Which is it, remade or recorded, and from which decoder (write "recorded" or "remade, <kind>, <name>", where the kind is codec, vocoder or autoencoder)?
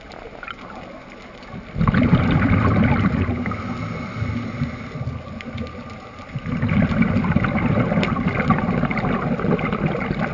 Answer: recorded